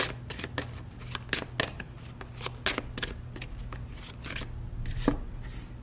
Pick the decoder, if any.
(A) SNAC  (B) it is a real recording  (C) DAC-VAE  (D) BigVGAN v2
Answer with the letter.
B